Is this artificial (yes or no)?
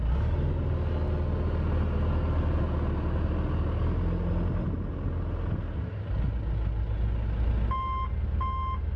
no